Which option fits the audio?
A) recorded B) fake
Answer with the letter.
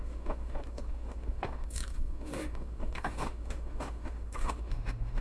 B